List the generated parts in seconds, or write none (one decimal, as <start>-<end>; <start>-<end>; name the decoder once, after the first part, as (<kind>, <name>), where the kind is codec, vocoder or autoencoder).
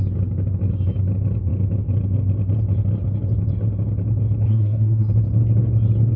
4.4-5.1 (codec, SNAC)